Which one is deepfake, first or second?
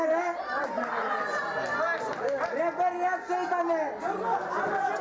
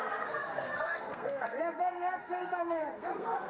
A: second